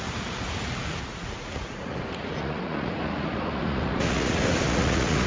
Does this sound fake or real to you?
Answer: fake